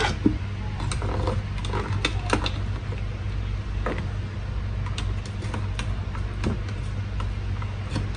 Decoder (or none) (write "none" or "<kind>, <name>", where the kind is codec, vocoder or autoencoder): none